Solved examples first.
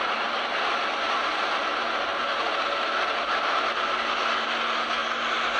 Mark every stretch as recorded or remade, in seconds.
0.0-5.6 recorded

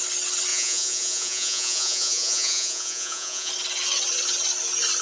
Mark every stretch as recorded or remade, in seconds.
0.0-0.5 recorded; 0.5-3.5 remade; 3.5-5.0 recorded